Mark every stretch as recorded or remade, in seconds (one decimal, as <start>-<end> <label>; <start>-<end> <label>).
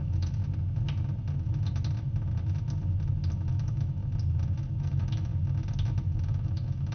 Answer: 0.0-0.4 remade; 0.4-3.5 recorded; 3.5-4.0 remade; 4.0-4.8 recorded; 4.8-5.3 remade; 5.3-6.2 recorded; 6.2-6.9 remade